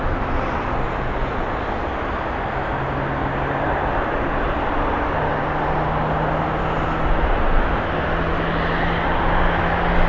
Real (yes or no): yes